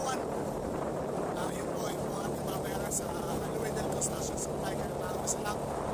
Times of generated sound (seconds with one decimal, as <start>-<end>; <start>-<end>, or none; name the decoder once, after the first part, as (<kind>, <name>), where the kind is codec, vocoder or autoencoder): 0.0-3.5 (vocoder, BigVGAN v2)